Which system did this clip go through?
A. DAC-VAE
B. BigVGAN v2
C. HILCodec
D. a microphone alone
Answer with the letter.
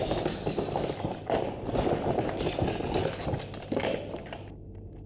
D